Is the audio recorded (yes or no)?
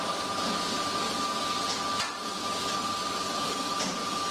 yes